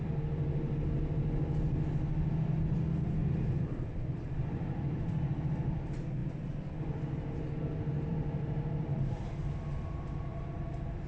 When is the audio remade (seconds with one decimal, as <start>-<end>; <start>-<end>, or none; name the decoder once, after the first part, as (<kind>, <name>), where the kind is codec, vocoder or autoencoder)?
3.2-5.4 (vocoder, BigVGAN v2); 8.1-9.4; 10.3-11.1